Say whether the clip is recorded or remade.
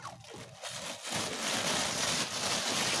recorded